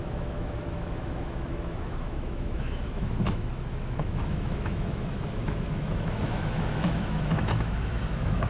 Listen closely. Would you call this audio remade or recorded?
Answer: remade